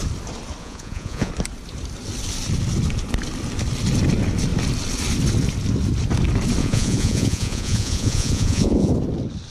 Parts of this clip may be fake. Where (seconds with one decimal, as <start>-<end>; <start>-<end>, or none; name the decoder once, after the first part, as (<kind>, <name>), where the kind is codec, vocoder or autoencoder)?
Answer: 0.6-1.3 (vocoder, Vocos); 6.6-8.9